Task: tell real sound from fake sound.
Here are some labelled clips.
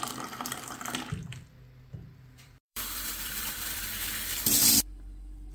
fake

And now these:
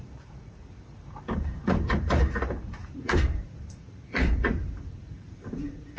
fake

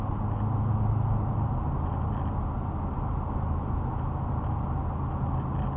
real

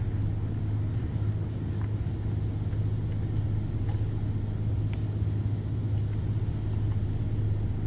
real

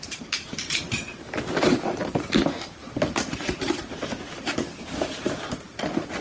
fake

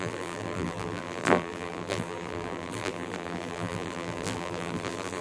fake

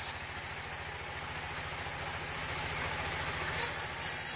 real